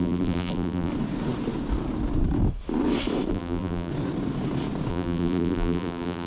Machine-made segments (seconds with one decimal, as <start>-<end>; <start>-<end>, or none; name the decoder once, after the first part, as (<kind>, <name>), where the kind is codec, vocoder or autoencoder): 0.0-0.9 (vocoder, BigVGAN v2); 3.3-3.9; 4.9-6.3